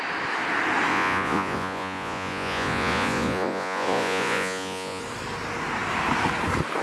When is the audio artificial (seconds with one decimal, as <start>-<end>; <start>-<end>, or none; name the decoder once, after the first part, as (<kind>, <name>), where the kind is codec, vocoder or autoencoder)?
0.9-5.0 (vocoder, Vocos)